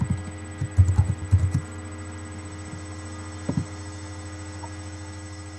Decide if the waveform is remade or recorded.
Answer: recorded